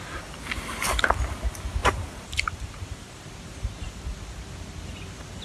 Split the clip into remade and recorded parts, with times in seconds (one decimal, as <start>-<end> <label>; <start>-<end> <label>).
0.0-1.8 recorded; 1.8-3.2 remade; 3.2-5.4 recorded